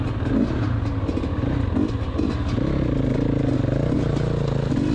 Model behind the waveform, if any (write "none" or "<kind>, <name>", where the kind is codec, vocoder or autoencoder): none